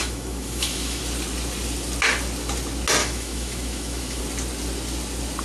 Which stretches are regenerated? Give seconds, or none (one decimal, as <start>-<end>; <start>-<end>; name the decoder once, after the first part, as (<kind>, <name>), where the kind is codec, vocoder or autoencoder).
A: 0.0-1.0 (autoencoder, DAC-VAE); 3.0-4.2